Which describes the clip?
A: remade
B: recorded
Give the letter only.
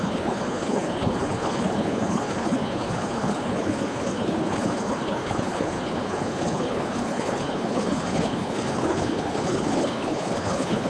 A